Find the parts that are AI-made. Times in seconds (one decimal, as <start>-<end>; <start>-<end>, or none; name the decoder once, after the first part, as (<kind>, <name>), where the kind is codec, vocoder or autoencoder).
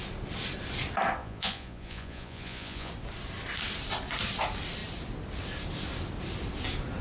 1.2-2.9 (vocoder, Vocos)